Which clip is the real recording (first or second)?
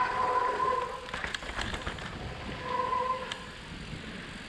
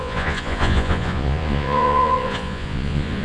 first